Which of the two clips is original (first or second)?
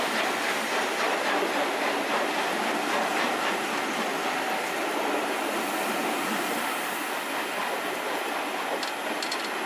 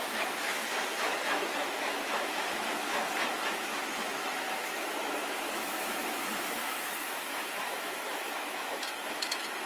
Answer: first